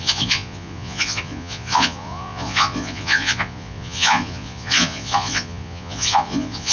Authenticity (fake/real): fake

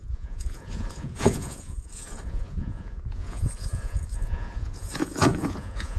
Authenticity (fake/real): fake